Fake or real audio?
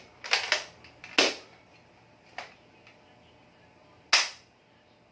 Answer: real